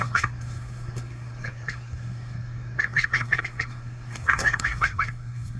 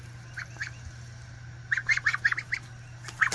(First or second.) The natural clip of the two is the second